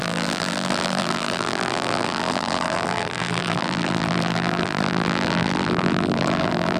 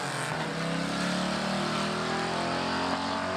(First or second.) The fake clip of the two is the first